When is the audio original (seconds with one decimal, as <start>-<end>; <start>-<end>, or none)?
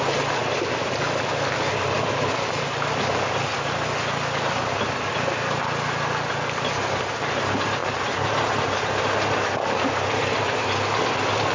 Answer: 0.0-11.5